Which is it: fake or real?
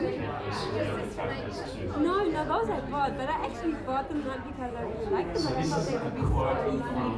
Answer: real